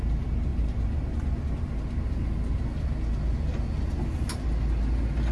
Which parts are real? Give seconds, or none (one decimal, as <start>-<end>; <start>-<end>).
0.0-5.3